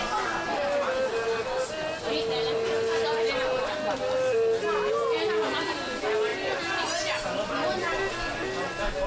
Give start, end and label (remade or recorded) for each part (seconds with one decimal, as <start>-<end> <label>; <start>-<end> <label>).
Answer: 0.0-9.1 recorded